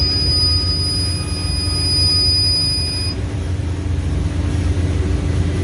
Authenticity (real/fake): real